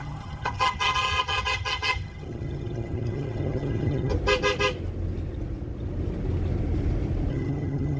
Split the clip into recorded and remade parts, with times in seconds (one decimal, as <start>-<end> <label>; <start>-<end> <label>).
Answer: 0.0-4.1 remade; 4.1-7.3 recorded; 7.3-8.0 remade